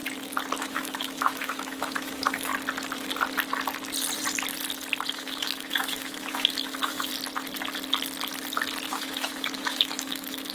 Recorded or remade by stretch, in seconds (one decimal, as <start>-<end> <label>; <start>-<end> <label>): 0.0-0.6 recorded; 0.6-2.5 remade; 2.5-5.1 recorded; 5.1-7.1 remade; 7.1-8.9 recorded; 8.9-10.5 remade